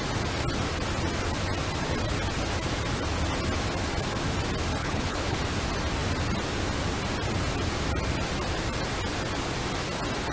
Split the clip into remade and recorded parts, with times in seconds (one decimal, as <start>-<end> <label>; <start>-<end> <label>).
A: 0.0-4.8 recorded; 4.8-5.4 remade; 5.4-10.3 recorded